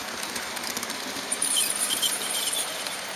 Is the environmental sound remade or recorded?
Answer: remade